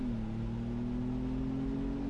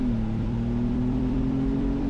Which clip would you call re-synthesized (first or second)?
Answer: second